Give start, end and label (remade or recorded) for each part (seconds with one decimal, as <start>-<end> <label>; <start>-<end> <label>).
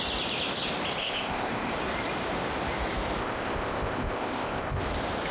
0.0-1.0 recorded; 1.0-1.7 remade; 1.7-3.2 recorded; 3.2-4.8 remade; 4.8-5.3 recorded